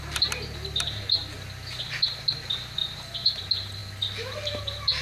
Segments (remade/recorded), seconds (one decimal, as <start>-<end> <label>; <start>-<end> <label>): 0.0-2.8 recorded; 2.8-3.4 remade; 3.4-5.0 recorded